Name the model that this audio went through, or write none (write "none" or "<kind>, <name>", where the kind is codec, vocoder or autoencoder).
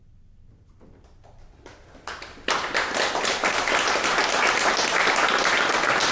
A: none